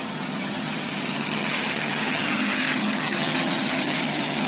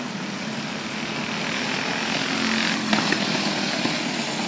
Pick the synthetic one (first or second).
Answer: first